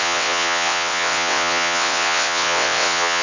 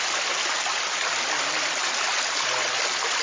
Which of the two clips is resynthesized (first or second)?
first